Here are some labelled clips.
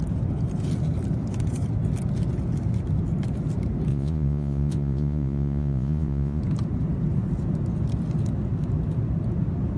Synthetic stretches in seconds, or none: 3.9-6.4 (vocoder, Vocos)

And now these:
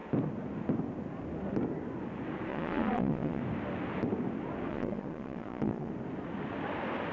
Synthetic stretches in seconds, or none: 2.5-3.4 (vocoder, Vocos); 4.7-5.9

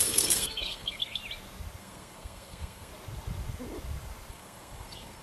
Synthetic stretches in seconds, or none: 0.0-1.2 (codec, SNAC); 1.8-2.9; 4.3-5.2

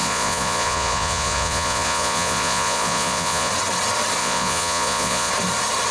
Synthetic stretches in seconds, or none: 0.0-3.5 (vocoder, Vocos); 4.2-5.3

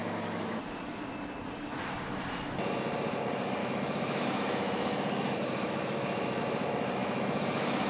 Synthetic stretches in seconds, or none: 0.0-0.6 (autoencoder, DAC-VAE); 3.6-6.4; 7.0-7.9

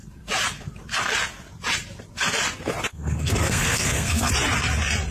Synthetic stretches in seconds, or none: 2.9-4.3 (codec, SNAC)

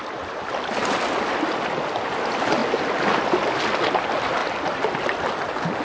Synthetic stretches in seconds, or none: none

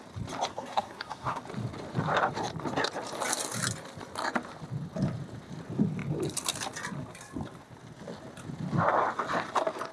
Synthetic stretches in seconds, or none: 0.5-1.4 (codec, SNAC)